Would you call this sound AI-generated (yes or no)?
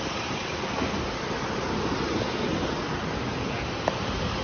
no